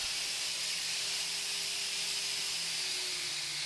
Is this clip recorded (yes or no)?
yes